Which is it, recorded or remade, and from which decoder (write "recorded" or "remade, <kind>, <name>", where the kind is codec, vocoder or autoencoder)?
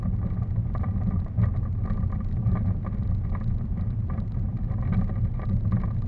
recorded